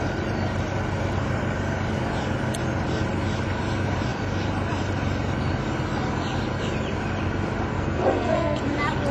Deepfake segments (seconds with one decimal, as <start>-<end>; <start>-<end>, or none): 7.7-8.6